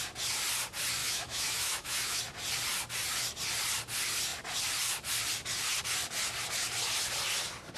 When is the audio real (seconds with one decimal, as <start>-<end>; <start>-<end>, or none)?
0.0-1.0; 2.2-7.8